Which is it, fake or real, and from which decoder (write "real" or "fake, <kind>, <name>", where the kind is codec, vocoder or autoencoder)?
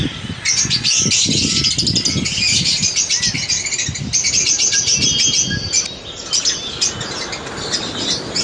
real